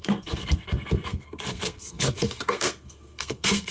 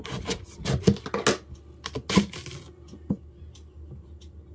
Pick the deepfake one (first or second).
first